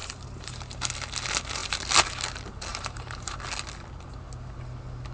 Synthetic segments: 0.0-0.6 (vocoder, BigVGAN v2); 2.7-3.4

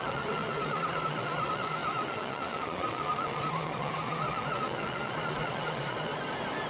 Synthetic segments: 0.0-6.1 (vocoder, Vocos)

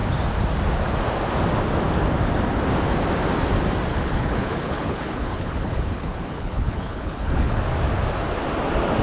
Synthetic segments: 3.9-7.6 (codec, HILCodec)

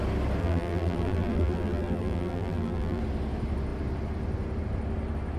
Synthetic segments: 0.4-3.0 (vocoder, BigVGAN v2)

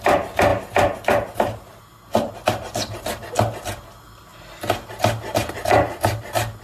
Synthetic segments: none

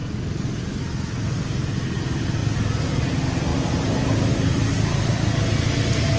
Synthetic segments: none

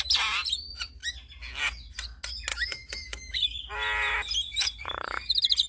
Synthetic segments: 2.5-3.6 (autoencoder, DAC-VAE); 4.5-5.3

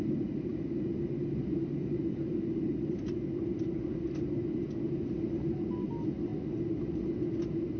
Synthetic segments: none